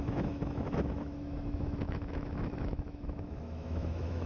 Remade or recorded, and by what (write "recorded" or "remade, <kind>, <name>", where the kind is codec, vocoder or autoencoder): remade, autoencoder, DAC-VAE